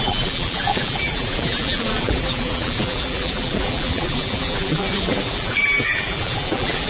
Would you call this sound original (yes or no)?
no